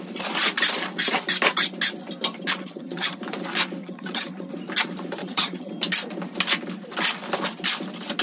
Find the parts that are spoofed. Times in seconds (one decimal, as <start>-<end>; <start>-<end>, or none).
2.6-3.2; 3.8-4.5; 5.2-5.7